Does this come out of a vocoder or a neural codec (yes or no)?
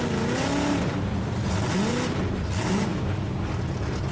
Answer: no